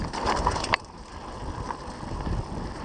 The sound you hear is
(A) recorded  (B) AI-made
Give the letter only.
A